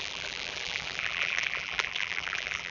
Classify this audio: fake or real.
fake